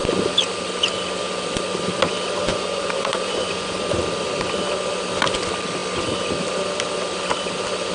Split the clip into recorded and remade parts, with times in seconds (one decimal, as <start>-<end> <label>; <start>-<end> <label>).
0.0-2.5 recorded; 2.5-3.8 remade; 3.8-7.9 recorded